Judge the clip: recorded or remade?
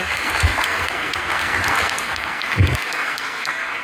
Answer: remade